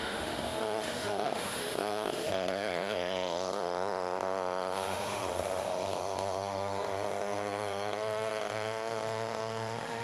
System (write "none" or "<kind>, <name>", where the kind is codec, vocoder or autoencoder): autoencoder, DAC-VAE